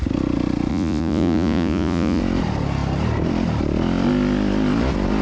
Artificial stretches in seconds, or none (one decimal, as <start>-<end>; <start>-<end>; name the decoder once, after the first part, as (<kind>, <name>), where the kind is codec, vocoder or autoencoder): 0.7-2.2 (vocoder, Vocos)